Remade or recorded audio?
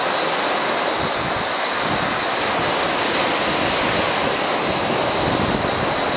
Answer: recorded